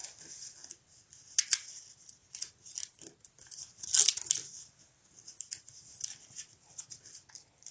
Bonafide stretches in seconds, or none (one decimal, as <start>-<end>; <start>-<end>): 0.0-7.7